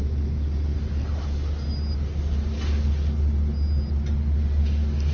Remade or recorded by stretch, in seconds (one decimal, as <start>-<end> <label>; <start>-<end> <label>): 0.0-5.1 recorded